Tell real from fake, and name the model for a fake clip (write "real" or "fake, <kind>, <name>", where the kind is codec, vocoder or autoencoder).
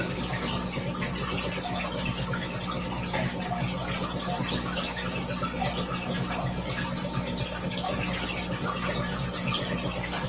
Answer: real